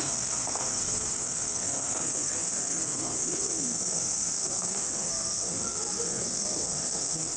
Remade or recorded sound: remade